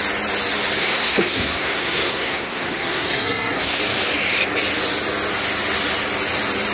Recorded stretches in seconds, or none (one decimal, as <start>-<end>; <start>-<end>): 0.0-0.8; 3.8-6.7